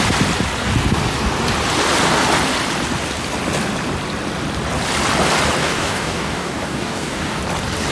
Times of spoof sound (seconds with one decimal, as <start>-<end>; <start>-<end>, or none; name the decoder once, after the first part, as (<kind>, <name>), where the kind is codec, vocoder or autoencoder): 5.6-7.4 (codec, DAC)